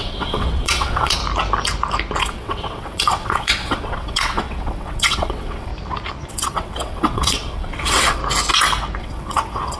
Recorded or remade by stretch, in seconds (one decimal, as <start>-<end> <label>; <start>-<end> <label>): 0.0-1.2 remade; 1.2-2.2 recorded; 2.2-5.7 remade; 5.7-6.3 recorded; 6.3-8.2 remade; 8.2-9.0 recorded; 9.0-9.8 remade